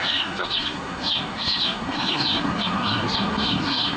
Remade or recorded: remade